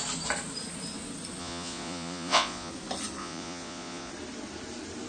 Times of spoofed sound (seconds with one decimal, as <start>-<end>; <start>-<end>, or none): 1.4-2.7; 3.2-4.1